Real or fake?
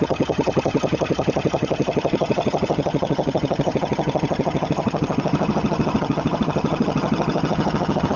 fake